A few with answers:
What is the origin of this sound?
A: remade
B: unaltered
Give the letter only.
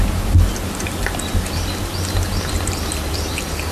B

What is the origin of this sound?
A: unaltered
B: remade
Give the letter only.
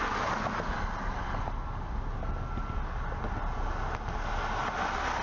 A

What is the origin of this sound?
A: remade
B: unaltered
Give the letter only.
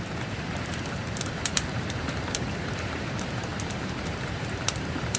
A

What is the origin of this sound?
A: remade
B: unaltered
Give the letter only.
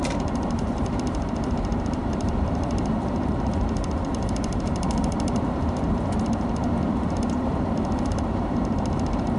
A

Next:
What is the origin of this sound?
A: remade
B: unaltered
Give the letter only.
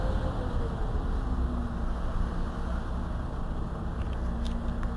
B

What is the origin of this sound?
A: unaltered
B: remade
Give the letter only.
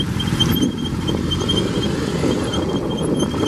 A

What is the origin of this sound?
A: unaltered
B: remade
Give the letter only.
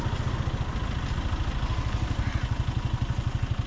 A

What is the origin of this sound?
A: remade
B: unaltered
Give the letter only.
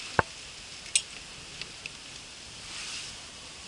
B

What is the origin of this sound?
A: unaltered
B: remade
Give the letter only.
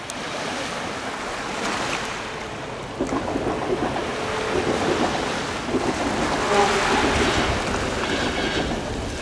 A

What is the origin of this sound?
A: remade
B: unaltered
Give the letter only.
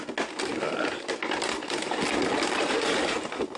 B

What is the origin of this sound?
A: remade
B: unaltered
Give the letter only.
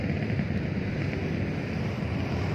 B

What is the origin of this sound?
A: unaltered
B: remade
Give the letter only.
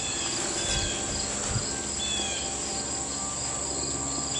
A